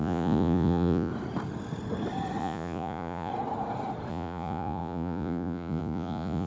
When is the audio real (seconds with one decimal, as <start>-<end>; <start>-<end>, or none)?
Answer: 1.1-2.4; 3.3-4.1